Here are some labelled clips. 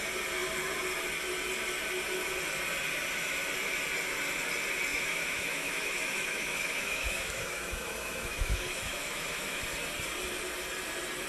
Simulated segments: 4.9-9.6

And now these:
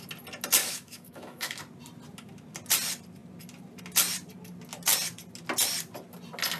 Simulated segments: 0.6-1.6

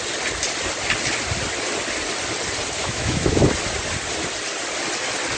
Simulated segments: 2.8-3.4

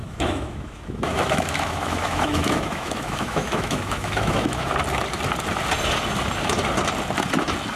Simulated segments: 0.0-4.7

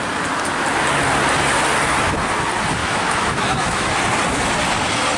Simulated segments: 2.8-4.0

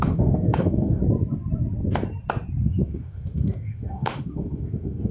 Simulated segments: 0.0-1.0; 2.6-5.1